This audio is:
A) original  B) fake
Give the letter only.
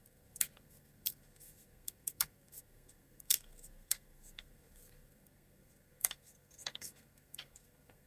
B